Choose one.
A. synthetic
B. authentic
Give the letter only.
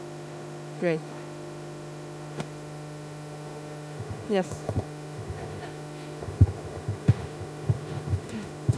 A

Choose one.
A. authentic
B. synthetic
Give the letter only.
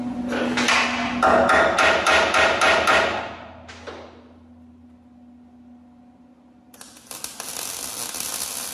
A